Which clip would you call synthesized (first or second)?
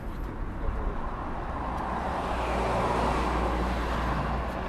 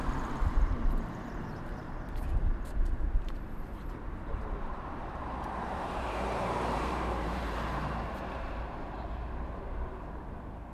second